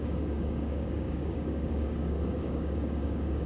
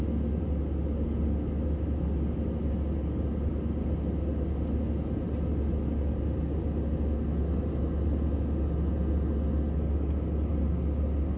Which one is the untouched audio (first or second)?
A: second